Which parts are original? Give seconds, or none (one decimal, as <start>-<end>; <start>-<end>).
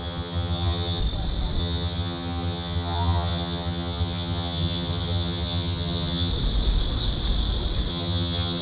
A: 1.0-1.6; 6.3-7.9